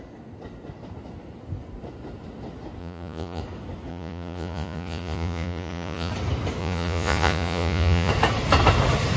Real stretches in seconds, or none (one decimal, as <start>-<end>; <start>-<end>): 0.0-2.8; 3.4-3.9; 6.1-6.6; 8.1-9.2